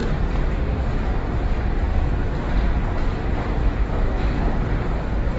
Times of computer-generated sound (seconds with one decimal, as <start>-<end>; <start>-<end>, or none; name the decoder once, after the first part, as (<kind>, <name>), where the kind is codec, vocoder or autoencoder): 3.6-4.2 (autoencoder, DAC-VAE)